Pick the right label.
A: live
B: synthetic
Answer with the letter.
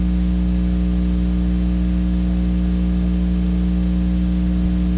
A